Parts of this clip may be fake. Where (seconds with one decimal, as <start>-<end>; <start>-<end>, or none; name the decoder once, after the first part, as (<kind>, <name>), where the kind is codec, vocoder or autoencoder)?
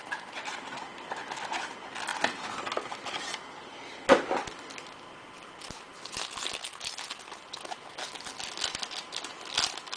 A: none